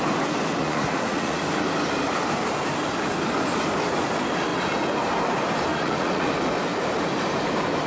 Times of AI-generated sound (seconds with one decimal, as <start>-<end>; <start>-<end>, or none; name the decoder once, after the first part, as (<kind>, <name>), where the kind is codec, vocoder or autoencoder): 0.6-1.4 (vocoder, Vocos); 5.7-6.3